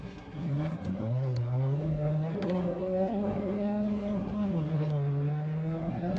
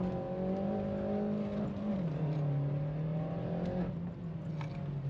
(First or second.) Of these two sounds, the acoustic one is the second